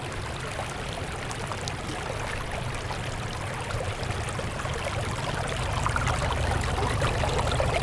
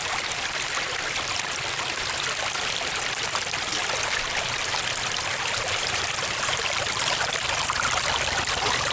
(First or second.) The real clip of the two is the first